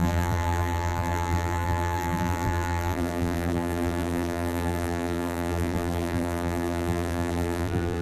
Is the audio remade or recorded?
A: remade